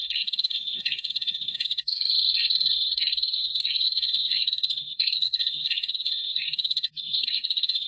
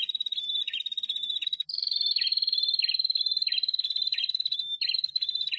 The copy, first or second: first